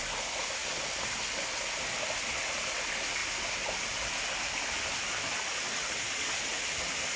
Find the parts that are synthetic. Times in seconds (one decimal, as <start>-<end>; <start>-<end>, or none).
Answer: none